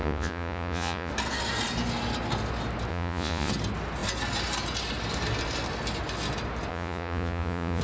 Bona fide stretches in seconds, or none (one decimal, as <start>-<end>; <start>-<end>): 1.1-2.9; 3.5-6.7